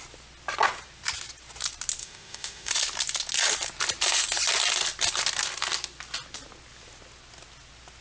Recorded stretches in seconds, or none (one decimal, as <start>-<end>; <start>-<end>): 0.0-2.0; 2.7-8.0